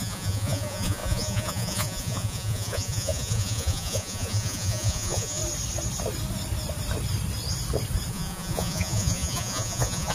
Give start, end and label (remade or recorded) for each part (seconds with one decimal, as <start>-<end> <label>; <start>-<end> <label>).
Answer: 0.0-5.4 remade; 5.4-8.1 recorded; 8.1-10.1 remade